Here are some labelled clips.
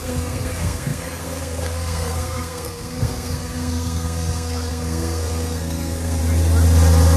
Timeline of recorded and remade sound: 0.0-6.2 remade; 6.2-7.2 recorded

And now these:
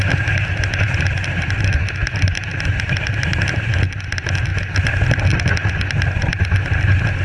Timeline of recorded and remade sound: 0.0-7.2 recorded

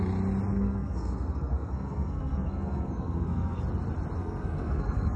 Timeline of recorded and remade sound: 0.0-0.5 recorded; 0.5-3.6 remade; 3.6-4.2 recorded; 4.2-5.2 remade